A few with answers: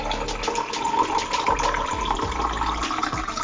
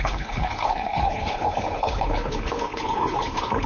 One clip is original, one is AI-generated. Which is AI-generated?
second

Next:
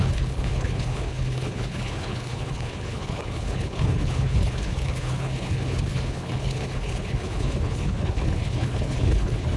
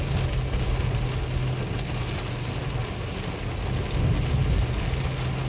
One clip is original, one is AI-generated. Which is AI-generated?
first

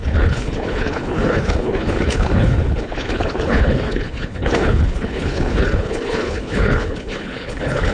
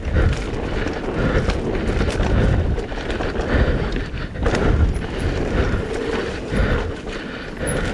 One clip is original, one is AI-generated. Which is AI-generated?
first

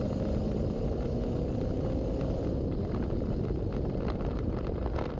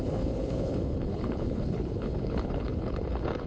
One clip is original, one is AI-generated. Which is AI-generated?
second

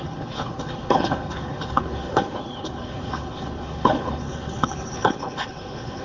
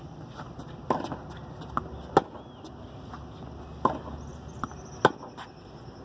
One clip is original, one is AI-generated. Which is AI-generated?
first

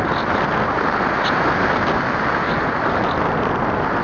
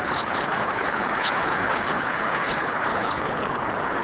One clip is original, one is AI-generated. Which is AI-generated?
second